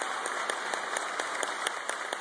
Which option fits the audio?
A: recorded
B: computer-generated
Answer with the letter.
A